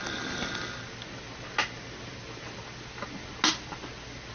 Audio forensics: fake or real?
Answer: real